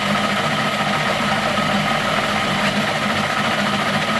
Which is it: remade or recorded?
recorded